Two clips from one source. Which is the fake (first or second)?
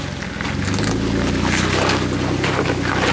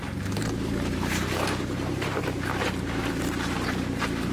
second